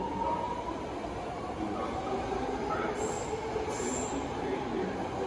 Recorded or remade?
recorded